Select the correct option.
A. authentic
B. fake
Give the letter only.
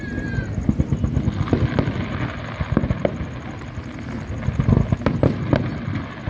A